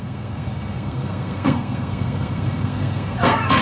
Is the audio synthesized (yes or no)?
yes